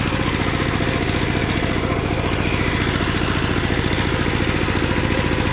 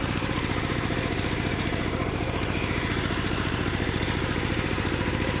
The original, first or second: first